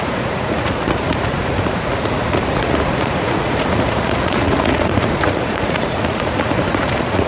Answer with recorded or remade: remade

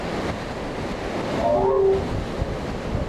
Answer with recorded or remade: recorded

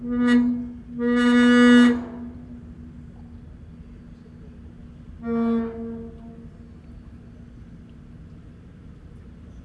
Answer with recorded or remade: recorded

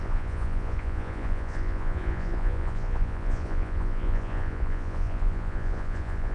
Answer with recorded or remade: remade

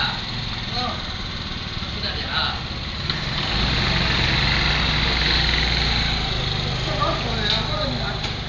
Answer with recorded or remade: recorded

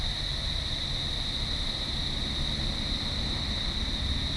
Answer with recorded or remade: recorded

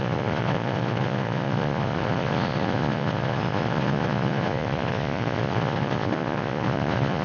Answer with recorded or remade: remade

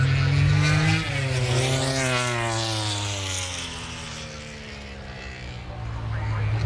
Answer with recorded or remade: recorded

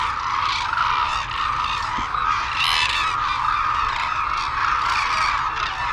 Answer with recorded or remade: recorded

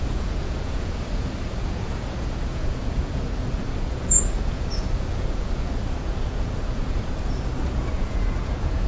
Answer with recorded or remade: remade